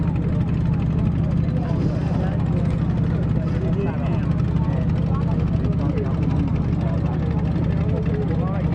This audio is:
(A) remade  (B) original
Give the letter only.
B